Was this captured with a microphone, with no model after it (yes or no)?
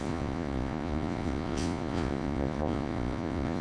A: no